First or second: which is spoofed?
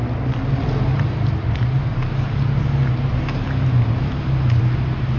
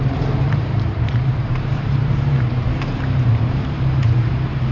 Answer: second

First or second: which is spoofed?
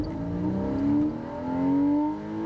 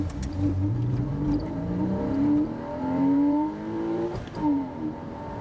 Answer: second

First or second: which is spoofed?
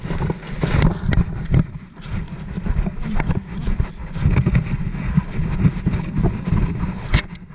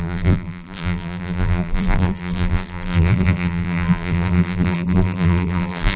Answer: second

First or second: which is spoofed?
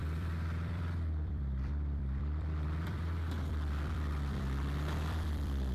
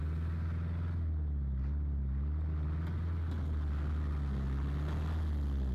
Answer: first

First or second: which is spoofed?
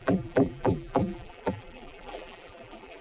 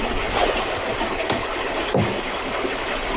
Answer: first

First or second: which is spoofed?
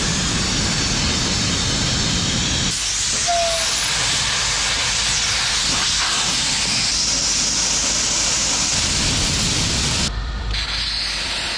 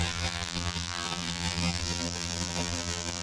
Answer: second